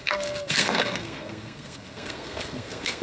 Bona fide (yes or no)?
no